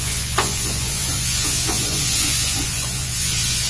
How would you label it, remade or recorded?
remade